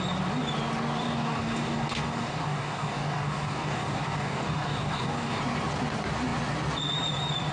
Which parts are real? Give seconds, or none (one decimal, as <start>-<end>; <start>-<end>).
0.0-1.0; 5.4-7.5